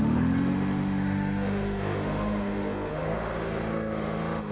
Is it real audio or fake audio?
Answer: fake